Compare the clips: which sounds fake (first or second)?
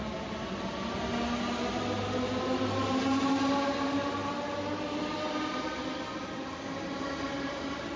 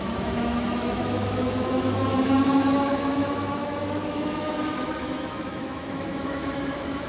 second